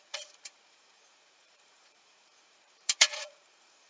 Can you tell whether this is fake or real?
fake